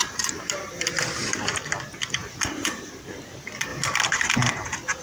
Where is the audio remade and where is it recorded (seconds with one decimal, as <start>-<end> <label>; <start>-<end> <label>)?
0.0-0.9 remade; 0.9-2.2 recorded; 2.2-2.9 remade; 2.9-5.0 recorded